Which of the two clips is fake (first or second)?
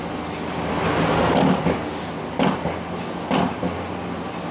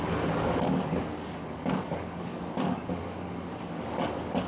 second